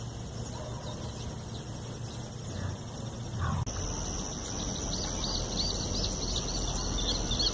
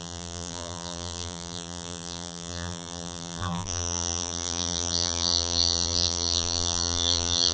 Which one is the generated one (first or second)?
second